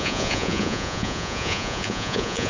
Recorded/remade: remade